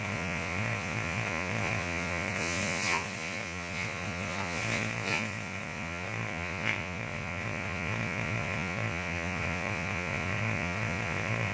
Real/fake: fake